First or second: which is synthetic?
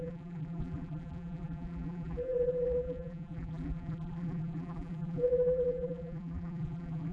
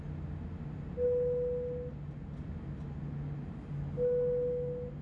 first